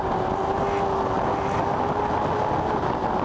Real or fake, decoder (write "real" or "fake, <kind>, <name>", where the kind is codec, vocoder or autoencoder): real